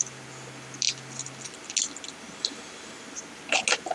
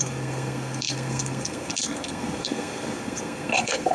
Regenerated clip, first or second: second